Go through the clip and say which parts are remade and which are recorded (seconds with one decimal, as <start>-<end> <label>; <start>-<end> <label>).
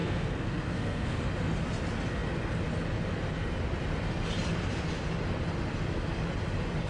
0.0-1.2 remade; 1.2-6.9 recorded